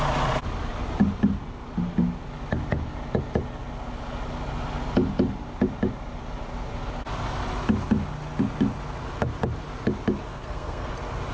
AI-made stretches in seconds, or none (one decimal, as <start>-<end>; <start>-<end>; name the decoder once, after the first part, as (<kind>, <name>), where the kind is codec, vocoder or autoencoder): 10.3-10.9 (codec, SNAC)